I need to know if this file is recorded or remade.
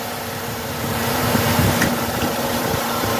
remade